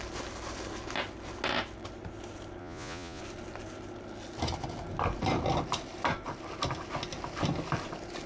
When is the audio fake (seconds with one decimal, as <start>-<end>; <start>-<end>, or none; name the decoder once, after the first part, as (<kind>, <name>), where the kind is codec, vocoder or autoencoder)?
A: 2.6-3.2 (vocoder, Vocos)